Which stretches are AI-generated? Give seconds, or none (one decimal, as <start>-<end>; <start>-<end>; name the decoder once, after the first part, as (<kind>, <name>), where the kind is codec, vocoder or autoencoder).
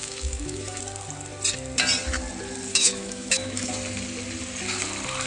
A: 0.0-0.8 (autoencoder, DAC-VAE); 2.7-3.7